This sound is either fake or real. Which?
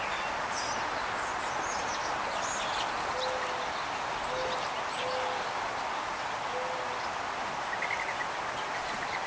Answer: real